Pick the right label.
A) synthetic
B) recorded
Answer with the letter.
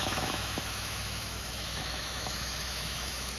A